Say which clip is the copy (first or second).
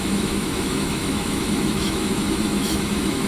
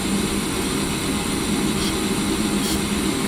first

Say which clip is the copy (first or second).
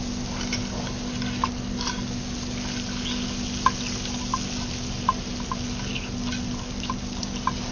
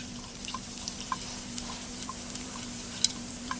second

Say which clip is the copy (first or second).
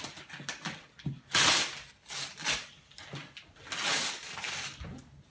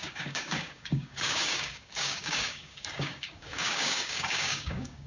second